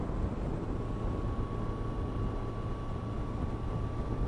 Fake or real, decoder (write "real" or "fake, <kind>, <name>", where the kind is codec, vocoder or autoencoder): real